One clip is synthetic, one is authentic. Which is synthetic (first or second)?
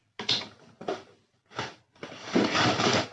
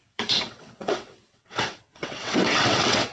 second